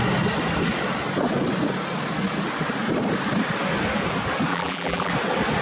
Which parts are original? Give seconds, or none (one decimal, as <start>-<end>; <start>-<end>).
0.0-4.5; 5.1-5.6